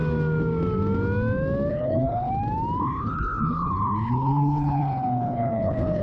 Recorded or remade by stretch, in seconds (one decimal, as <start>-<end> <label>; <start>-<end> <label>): 0.0-1.7 recorded; 1.7-2.3 remade; 2.3-2.8 recorded; 2.8-6.0 remade